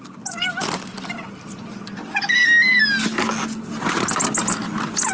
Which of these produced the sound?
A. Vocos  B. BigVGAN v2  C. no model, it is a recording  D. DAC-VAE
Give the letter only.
C